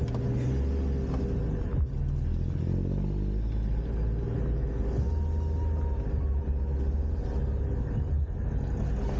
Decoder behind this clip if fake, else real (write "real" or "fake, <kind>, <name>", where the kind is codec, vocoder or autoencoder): real